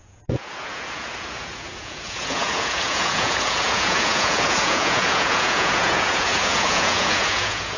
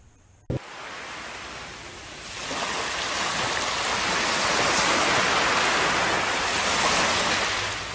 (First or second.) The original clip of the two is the second